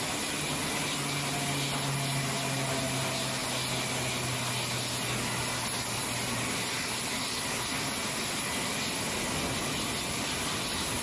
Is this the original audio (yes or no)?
yes